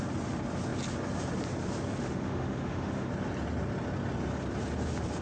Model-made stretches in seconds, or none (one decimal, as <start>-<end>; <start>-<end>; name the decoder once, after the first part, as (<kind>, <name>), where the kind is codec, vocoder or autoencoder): 2.0-3.1 (autoencoder, DAC-VAE)